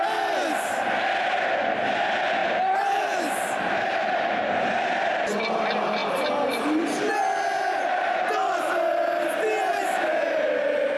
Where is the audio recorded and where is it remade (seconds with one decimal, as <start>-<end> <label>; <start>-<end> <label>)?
0.0-2.4 recorded; 2.4-3.0 remade; 3.0-9.7 recorded; 9.7-11.0 remade